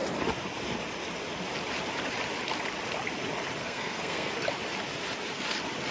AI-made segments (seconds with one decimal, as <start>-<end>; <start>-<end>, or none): 3.6-4.3